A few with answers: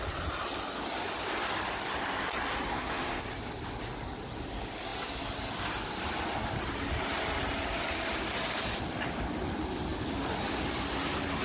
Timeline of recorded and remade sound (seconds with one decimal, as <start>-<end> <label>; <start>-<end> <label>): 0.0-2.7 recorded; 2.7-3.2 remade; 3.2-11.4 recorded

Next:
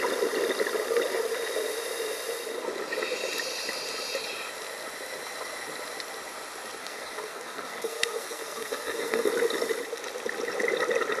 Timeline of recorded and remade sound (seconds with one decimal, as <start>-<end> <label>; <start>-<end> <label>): 0.0-6.8 recorded; 6.8-9.3 remade; 9.3-11.2 recorded

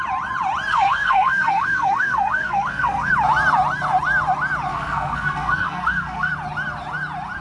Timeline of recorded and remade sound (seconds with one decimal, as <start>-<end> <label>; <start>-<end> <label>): 0.0-0.7 recorded; 0.7-3.1 remade; 3.1-4.7 recorded; 4.7-6.3 remade; 6.3-7.4 recorded

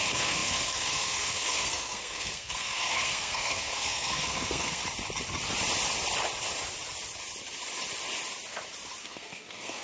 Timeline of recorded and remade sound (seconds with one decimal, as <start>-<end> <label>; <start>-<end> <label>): 0.0-4.8 remade; 4.8-9.0 recorded; 9.0-9.8 remade

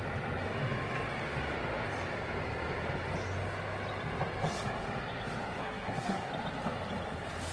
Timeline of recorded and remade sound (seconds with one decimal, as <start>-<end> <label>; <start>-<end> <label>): 0.0-5.6 recorded; 5.6-6.3 remade; 6.3-7.5 recorded

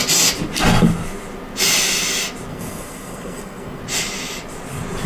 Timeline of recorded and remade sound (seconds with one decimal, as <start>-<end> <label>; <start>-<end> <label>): 0.0-2.5 recorded; 2.5-3.8 remade; 3.8-5.1 recorded

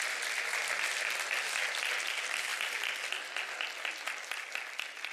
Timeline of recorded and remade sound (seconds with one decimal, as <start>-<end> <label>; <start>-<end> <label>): 0.0-5.1 recorded

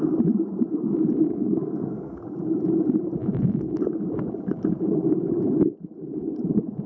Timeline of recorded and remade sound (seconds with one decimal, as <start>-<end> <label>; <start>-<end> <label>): 0.0-1.3 recorded; 1.3-2.2 remade; 2.2-6.9 recorded